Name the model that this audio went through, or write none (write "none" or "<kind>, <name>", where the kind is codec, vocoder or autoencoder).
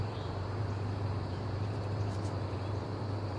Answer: vocoder, BigVGAN v2